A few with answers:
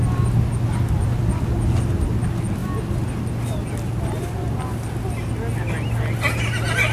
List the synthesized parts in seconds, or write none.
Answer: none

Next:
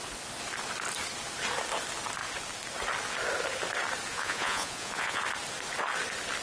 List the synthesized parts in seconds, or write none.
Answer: 4.1-5.2 (vocoder, Vocos)

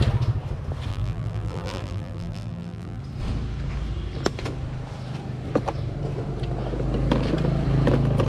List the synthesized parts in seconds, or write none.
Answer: 0.9-3.0 (vocoder, BigVGAN v2)

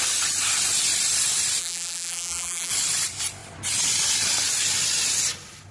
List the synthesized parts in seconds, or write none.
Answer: 1.6-2.7 (vocoder, BigVGAN v2)

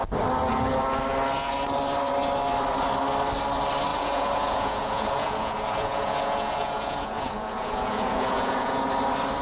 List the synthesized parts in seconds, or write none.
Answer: 3.9-8.9 (vocoder, Vocos)